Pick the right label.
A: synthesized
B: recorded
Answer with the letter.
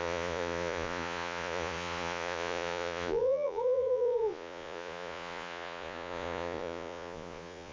A